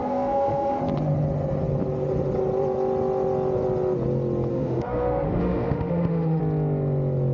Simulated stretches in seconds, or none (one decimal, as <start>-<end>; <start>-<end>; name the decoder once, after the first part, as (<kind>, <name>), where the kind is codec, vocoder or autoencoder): 0.0-0.8 (autoencoder, DAC-VAE); 4.5-6.4

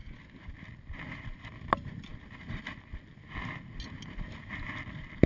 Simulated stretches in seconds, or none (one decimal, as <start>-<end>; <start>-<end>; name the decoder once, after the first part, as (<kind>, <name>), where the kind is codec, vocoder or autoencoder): none

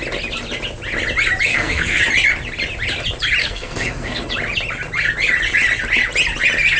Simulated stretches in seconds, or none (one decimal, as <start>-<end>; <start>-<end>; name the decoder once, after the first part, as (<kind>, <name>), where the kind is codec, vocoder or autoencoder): 1.5-2.0 (codec, SNAC); 3.4-4.3

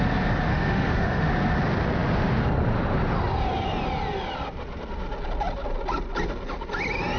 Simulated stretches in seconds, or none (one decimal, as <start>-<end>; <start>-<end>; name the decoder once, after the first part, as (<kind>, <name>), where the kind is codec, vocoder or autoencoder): 0.5-1.3 (autoencoder, DAC-VAE)

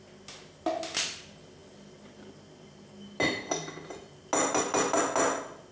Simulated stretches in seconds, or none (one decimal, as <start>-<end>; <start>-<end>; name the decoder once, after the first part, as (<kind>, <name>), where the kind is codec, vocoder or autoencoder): none

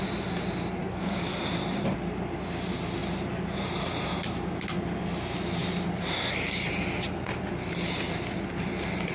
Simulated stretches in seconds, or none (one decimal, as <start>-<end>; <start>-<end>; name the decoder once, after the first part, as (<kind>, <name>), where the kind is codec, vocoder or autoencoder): 0.8-1.4 (codec, DAC)

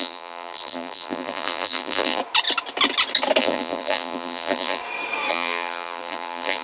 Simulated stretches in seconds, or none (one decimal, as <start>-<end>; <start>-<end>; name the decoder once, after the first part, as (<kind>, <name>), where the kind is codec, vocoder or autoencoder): 0.0-2.2 (vocoder, BigVGAN v2); 3.4-4.8; 5.3-6.6